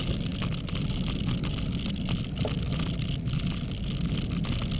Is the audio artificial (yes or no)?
no